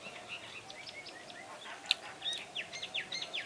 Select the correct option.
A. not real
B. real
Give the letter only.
B